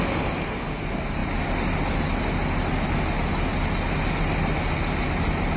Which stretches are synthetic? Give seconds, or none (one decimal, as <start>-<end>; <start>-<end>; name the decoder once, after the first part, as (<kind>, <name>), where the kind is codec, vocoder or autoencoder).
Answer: none